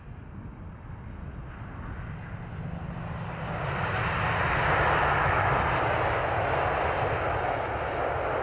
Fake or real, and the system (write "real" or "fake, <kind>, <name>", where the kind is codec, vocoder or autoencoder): real